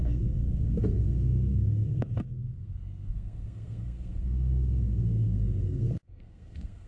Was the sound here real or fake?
fake